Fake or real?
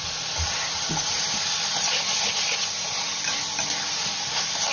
real